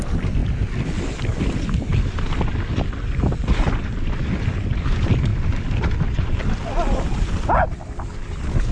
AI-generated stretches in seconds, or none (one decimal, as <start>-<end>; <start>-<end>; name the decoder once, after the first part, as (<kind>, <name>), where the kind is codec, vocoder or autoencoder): none

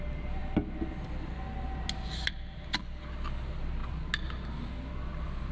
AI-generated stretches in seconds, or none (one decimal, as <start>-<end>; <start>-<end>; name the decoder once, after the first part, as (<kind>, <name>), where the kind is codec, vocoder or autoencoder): none

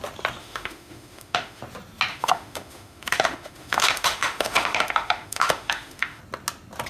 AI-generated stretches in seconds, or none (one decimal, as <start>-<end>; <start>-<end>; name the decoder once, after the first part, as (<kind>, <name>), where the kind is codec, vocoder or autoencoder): 0.4-1.6 (autoencoder, DAC-VAE); 2.1-6.2

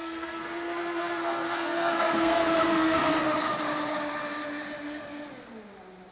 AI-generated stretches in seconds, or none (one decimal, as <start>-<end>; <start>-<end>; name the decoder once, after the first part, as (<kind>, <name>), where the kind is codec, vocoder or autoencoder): 0.0-3.1 (codec, SNAC)

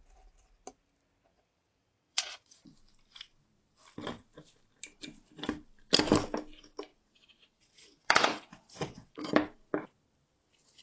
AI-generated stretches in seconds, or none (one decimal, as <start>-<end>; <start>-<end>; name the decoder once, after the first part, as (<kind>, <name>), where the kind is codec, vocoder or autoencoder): 1.3-2.6 (vocoder, WaveNeXt); 6.9-9.3